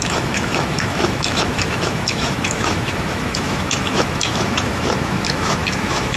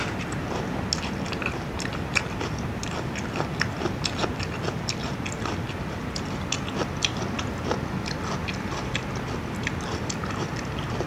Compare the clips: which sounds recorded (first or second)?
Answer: second